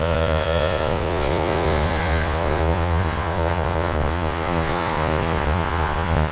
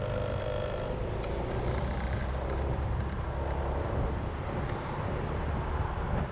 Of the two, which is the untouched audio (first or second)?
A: second